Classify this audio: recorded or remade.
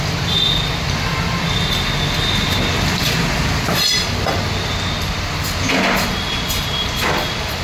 recorded